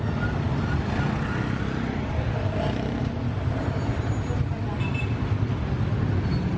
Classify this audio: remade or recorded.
recorded